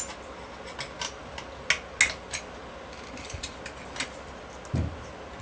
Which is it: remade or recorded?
recorded